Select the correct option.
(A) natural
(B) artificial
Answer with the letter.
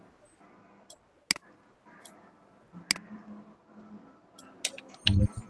A